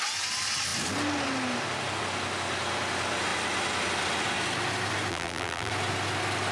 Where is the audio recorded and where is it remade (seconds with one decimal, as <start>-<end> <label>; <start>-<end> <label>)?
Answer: 0.0-5.1 recorded; 5.1-5.7 remade; 5.7-6.5 recorded